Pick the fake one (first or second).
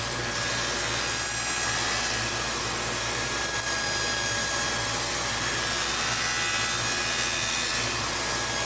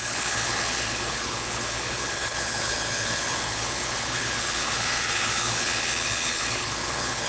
second